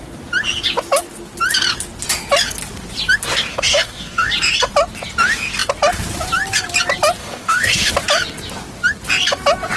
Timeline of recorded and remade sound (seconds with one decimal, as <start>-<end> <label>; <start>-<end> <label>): 0.0-3.5 recorded; 3.5-4.3 remade; 4.3-7.2 recorded; 7.2-7.9 remade; 7.9-9.8 recorded